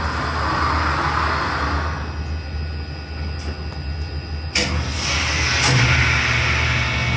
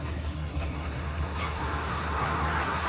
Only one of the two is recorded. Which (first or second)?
first